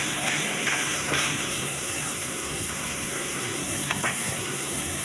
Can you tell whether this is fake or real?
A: fake